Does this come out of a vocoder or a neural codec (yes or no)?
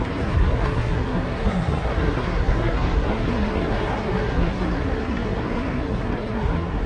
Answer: yes